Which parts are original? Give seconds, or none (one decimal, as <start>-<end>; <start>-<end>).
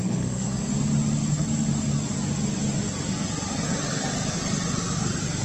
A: 0.7-5.4